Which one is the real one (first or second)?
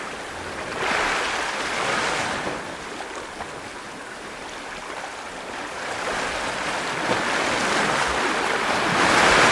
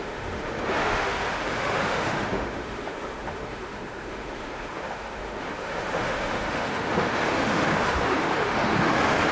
first